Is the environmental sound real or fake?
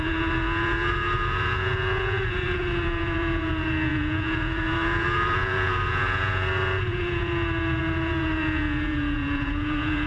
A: fake